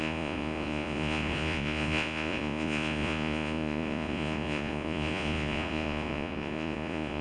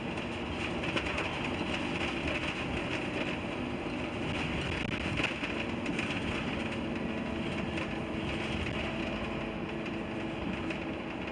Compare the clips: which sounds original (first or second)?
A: second